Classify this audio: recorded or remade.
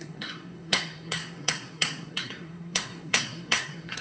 remade